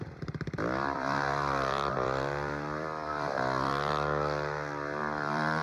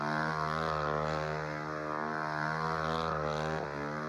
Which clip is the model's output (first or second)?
first